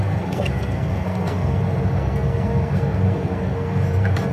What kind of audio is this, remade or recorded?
remade